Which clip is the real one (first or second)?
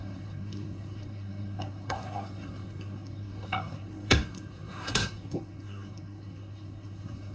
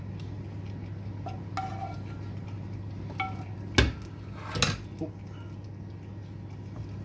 second